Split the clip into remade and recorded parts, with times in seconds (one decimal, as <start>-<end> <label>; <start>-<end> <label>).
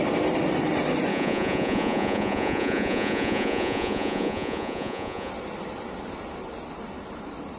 0.0-1.1 recorded; 1.1-5.3 remade; 5.3-7.6 recorded